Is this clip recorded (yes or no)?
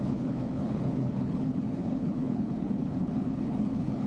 no